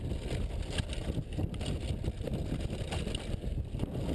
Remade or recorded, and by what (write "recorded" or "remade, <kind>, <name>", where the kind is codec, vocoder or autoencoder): recorded